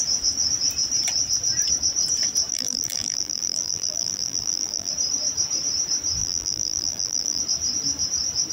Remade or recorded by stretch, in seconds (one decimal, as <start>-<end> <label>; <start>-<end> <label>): 0.0-2.5 recorded; 2.5-4.9 remade; 4.9-6.2 recorded; 6.2-7.4 remade; 7.4-8.5 recorded